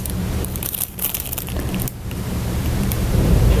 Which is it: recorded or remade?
remade